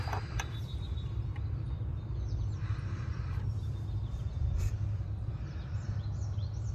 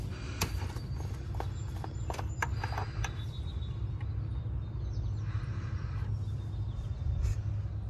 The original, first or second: second